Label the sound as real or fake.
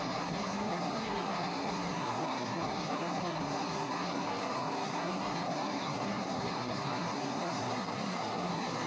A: fake